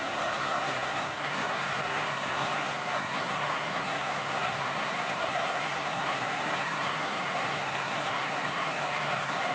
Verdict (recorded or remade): remade